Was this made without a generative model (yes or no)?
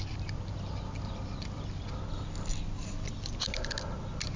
yes